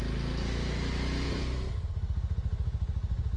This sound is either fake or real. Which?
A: real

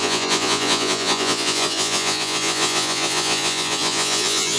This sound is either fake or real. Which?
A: fake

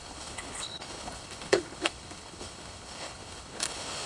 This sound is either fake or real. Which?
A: fake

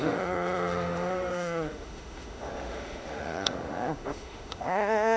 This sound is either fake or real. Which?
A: fake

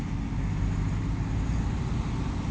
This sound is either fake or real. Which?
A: real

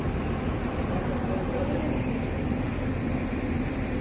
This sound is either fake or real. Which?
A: real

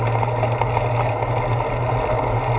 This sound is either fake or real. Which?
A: real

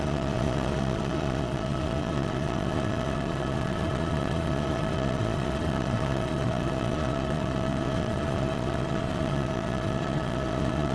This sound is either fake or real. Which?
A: fake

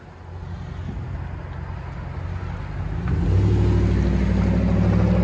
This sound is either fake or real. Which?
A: real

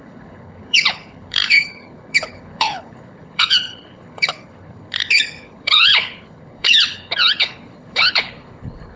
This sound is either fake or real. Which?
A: fake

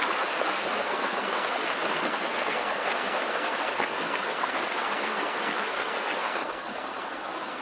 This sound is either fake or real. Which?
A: fake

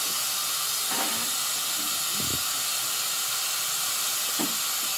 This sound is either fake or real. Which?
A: real